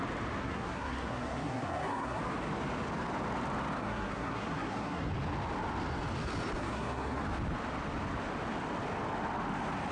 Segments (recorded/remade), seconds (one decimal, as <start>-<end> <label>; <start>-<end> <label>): 0.0-0.4 recorded; 0.4-2.2 remade; 2.2-3.8 recorded; 3.8-5.1 remade; 5.1-6.6 recorded; 6.6-7.2 remade; 7.2-9.9 recorded